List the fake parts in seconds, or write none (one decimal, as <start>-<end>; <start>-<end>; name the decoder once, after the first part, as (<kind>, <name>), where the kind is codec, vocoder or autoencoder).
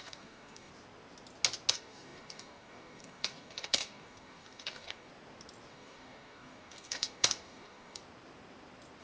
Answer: 0.0-0.7 (codec, DAC); 1.7-5.1; 5.7-8.0